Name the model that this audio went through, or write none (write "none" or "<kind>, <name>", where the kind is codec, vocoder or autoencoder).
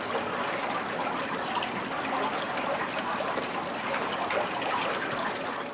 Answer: none